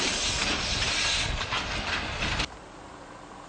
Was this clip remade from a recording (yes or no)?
no